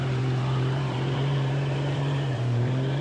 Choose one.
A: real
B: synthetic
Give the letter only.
B